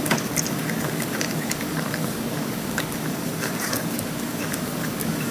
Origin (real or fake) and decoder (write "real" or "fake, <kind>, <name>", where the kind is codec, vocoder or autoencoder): fake, codec, DAC